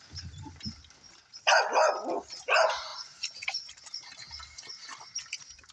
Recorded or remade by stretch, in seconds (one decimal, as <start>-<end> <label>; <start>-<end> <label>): 0.0-5.7 recorded